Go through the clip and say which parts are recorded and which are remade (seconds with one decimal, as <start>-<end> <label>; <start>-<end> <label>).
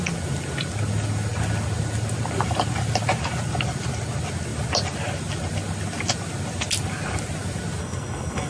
0.0-7.8 recorded; 7.8-8.5 remade